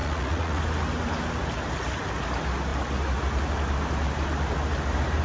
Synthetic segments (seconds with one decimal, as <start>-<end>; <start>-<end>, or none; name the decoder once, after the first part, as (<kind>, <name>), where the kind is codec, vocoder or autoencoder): 0.0-0.6 (vocoder, Vocos)